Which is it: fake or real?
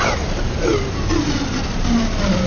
real